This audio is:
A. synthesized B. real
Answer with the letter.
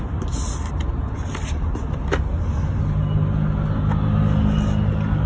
B